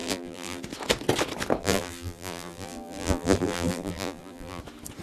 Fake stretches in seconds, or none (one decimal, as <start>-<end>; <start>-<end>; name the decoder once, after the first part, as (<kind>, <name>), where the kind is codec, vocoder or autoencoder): 0.0-0.6 (vocoder, BigVGAN v2); 1.6-4.6